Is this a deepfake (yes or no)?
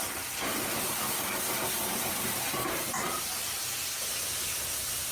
no